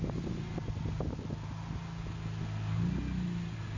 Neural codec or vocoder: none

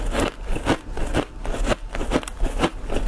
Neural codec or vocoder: none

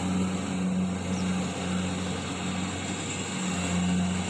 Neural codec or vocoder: none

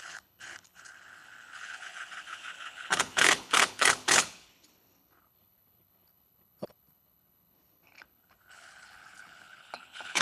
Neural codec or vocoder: codec, HILCodec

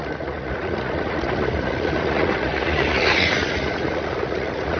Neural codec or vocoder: vocoder, Vocos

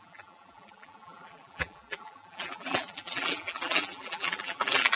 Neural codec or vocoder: vocoder, BigVGAN v2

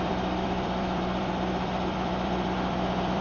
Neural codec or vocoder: vocoder, BigVGAN v2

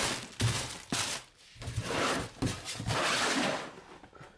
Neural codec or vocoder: none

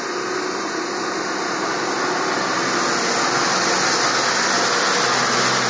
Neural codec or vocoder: none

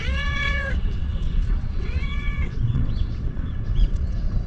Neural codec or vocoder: vocoder, WaveNeXt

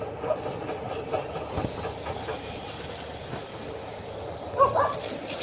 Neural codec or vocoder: none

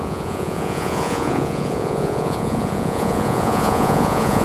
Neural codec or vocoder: vocoder, Vocos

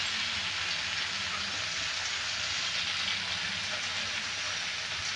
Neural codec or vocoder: none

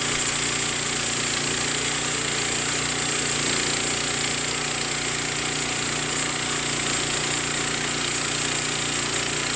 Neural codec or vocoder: none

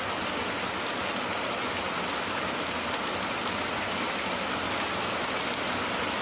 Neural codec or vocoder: none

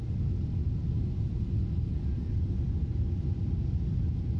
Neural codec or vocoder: none